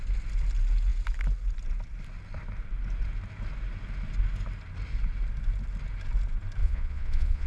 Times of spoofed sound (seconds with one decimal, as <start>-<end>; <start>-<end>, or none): 6.6-7.5